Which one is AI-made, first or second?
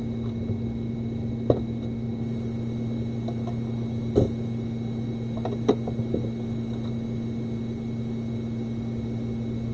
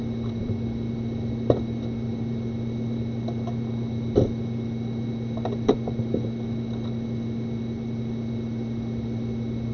second